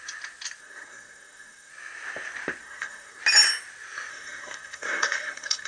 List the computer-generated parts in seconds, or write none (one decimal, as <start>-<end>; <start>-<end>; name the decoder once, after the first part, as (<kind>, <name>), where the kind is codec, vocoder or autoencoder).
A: 0.6-1.7 (codec, SNAC); 2.6-3.2; 4.1-5.7